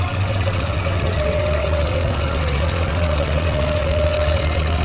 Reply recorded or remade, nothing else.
remade